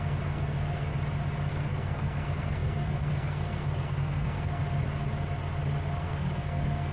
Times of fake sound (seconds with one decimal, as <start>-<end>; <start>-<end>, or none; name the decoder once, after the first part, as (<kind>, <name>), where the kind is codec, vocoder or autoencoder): 0.0-0.9 (codec, SNAC); 1.5-4.6; 6.0-6.9